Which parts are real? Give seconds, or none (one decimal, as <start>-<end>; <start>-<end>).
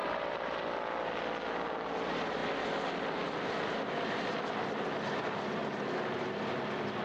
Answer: 0.0-7.0